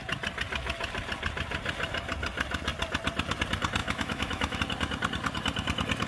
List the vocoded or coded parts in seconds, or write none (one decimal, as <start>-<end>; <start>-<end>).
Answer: 3.8-4.6